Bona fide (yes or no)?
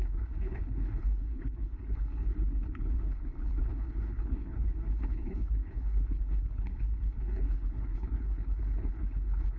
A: no